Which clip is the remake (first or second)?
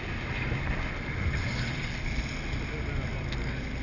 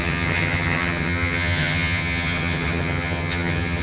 second